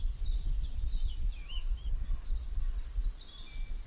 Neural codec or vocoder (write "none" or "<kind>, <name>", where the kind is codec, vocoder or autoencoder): none